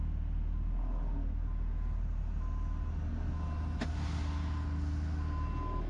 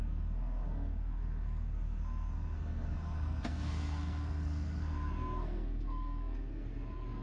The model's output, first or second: second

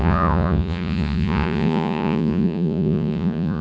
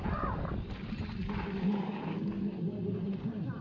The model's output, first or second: first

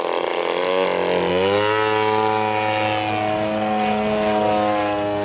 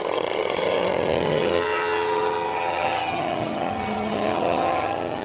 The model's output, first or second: second